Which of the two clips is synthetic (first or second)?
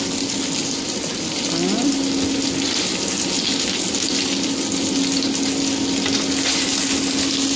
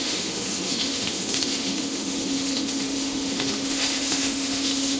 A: second